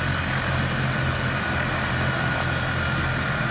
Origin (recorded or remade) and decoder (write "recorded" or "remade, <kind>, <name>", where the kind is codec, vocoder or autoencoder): recorded